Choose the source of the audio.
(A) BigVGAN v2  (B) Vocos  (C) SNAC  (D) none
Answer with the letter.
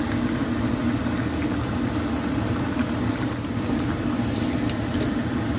D